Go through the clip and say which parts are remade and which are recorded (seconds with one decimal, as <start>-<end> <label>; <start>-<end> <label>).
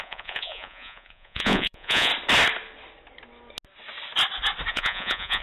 0.0-2.1 remade; 2.1-4.7 recorded; 4.7-5.4 remade